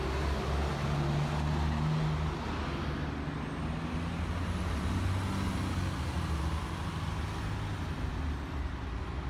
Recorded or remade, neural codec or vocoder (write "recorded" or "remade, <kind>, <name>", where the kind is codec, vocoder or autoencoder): recorded